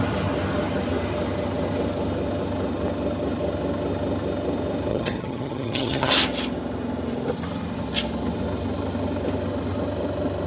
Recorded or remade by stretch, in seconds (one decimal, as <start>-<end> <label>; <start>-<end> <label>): 0.0-4.9 recorded; 4.9-6.1 remade; 6.1-10.5 recorded